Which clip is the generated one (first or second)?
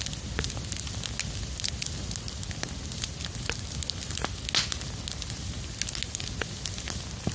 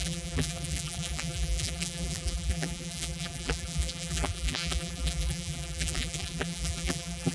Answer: second